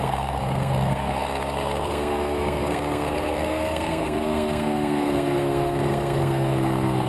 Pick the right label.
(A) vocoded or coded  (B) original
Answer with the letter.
A